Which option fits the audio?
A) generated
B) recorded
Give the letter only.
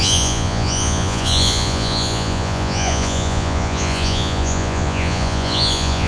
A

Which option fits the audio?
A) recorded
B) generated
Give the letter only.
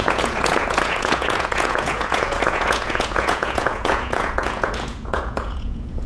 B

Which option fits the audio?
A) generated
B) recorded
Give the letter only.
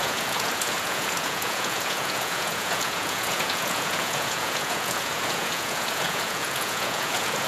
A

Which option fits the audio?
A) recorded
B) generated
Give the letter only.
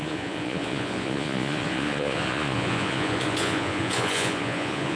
B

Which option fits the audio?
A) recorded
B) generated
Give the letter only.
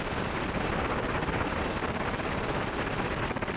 A